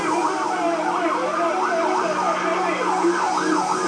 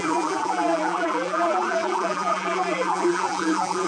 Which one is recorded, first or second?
first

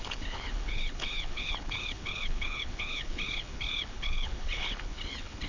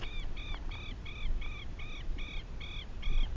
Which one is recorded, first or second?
second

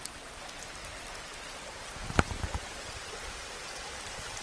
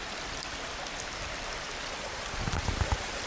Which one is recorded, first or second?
first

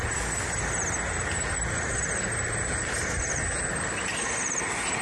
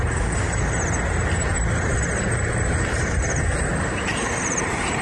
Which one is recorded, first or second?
first